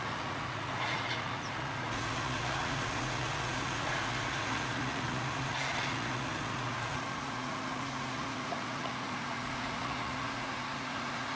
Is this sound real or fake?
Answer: fake